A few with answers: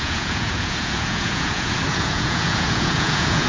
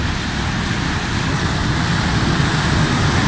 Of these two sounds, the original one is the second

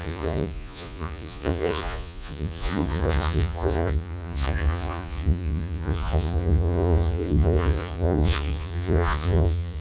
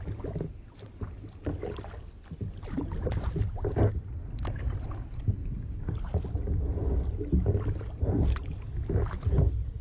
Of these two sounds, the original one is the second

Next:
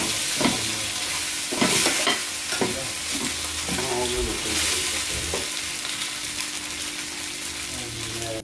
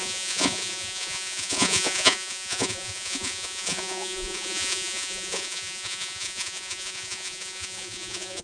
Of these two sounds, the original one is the first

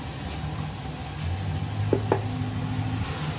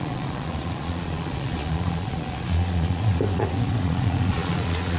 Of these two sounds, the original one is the first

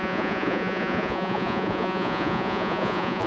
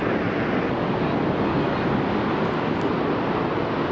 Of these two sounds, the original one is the second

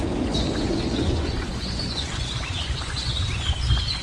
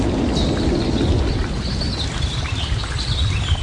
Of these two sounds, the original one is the second